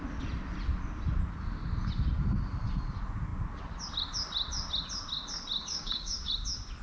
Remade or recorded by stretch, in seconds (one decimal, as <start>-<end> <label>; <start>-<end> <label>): 0.0-5.6 recorded; 5.6-6.3 remade; 6.3-6.8 recorded